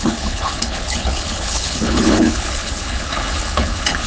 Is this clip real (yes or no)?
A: no